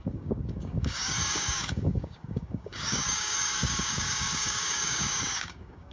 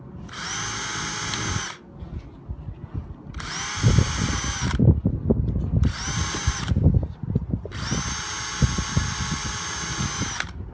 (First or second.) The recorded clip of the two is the second